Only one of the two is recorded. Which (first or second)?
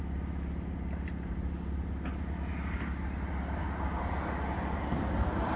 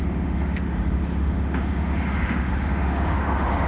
first